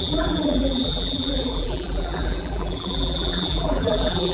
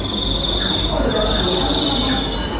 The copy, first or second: first